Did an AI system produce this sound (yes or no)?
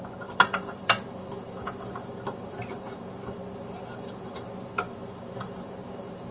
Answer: yes